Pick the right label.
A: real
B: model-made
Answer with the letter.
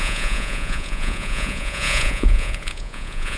B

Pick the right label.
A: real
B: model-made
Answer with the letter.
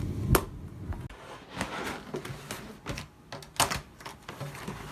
A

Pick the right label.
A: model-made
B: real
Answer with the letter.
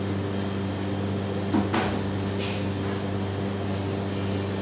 B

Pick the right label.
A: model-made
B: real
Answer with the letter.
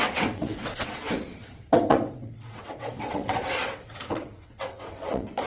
A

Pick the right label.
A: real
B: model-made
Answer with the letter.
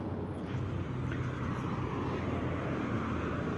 A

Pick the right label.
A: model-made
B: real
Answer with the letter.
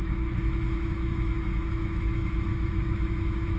A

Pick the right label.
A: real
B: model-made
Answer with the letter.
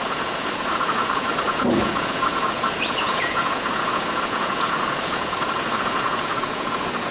B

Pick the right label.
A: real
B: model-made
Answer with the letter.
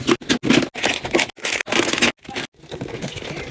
A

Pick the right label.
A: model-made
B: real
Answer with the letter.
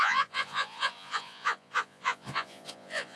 A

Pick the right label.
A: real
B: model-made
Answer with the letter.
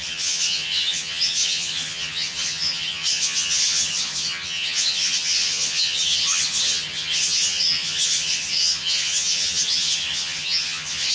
B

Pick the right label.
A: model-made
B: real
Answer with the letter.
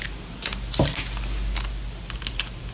B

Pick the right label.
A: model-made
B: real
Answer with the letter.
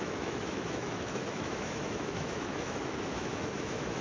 A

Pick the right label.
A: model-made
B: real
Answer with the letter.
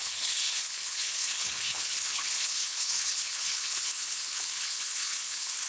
A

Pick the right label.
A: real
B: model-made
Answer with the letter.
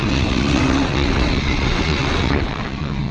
B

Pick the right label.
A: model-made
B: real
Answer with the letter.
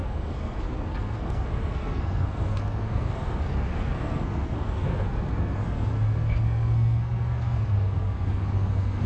A